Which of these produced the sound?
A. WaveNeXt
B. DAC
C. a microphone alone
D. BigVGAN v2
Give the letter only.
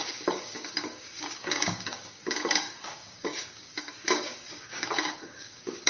B